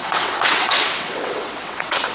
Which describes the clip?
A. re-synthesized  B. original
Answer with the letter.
A